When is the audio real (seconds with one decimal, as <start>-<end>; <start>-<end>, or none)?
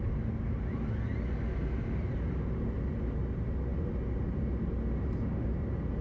0.0-6.0